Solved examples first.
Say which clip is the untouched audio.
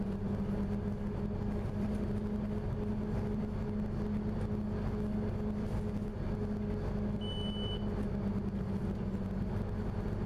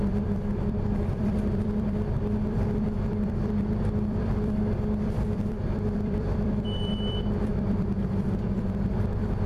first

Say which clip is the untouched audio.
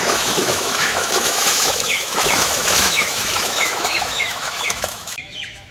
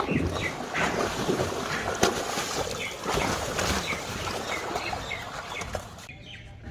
second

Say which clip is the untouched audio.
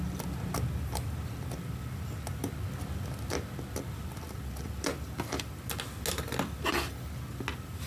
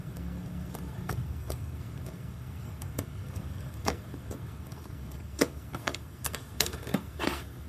first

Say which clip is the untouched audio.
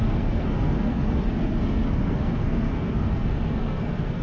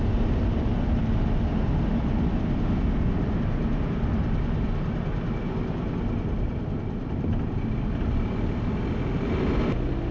second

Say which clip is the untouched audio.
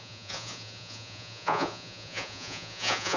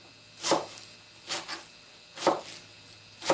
second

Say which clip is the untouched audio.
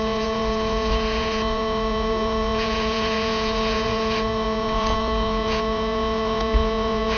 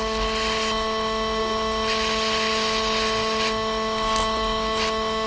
second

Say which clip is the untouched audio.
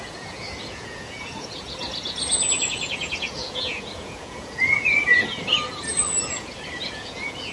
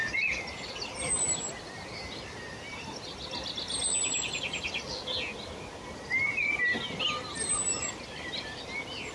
second